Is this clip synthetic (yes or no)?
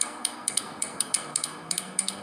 yes